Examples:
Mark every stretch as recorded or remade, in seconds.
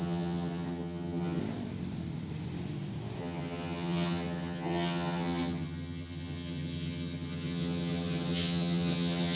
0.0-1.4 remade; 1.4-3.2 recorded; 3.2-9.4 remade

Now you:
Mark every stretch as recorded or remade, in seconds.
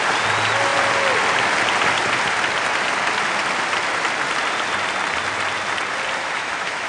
0.0-6.2 recorded; 6.2-6.9 remade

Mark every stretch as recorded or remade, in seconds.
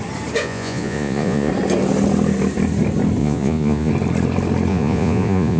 0.0-0.4 recorded; 0.4-1.5 remade; 1.5-3.2 recorded; 3.2-3.9 remade; 3.9-4.7 recorded; 4.7-5.6 remade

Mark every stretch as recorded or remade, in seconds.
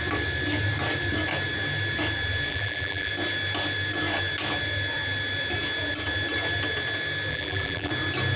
0.0-2.5 recorded; 2.5-3.1 remade; 3.1-7.3 recorded; 7.3-7.9 remade; 7.9-8.4 recorded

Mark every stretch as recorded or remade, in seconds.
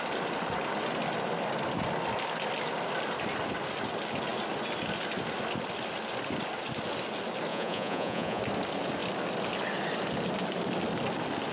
0.0-7.5 recorded; 7.5-8.4 remade; 8.4-11.5 recorded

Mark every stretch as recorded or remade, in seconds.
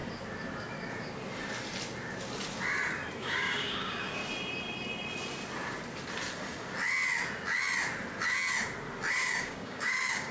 0.0-3.2 recorded; 3.2-4.2 remade; 4.2-9.1 recorded; 9.1-10.3 remade